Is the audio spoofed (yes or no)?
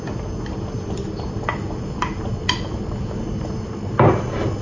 no